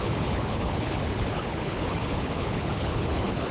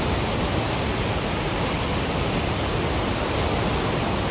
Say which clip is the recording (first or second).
second